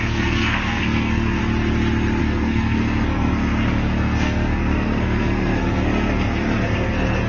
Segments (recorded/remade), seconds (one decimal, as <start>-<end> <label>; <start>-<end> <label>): 0.0-1.4 remade; 1.4-2.2 recorded; 2.2-7.3 remade